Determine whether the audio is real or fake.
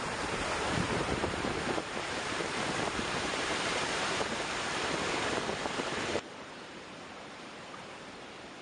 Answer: fake